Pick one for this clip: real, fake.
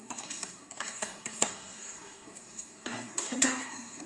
fake